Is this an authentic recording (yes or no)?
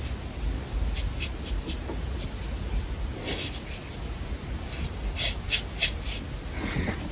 yes